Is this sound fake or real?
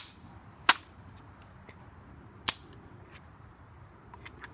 real